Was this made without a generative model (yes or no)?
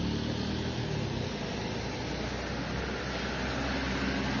yes